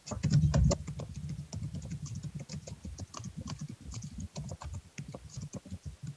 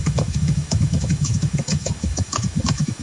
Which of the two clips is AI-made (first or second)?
second